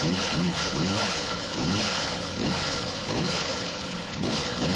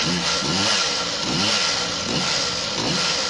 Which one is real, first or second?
second